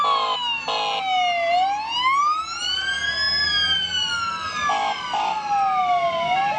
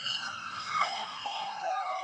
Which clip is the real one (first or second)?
first